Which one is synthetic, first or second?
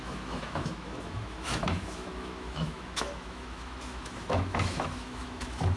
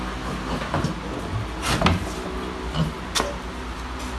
first